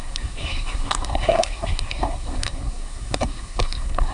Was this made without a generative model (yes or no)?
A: no